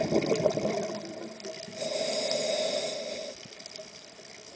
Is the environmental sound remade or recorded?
recorded